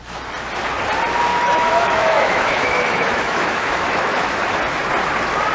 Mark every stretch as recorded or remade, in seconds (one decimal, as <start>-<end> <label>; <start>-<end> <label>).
0.0-1.3 recorded; 1.3-4.6 remade; 4.6-5.5 recorded